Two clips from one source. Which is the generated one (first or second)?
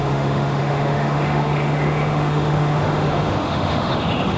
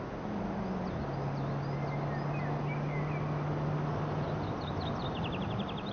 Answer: first